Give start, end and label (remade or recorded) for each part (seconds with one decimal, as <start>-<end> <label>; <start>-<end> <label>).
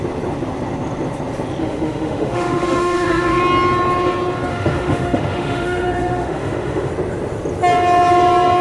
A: 0.0-1.6 recorded; 1.6-3.4 remade; 3.4-4.5 recorded; 4.5-6.9 remade; 6.9-8.6 recorded